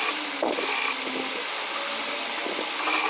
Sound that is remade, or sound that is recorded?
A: recorded